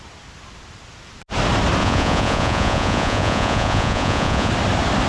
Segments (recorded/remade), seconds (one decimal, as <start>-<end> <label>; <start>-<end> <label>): 0.0-1.8 recorded; 1.8-4.5 remade; 4.5-5.1 recorded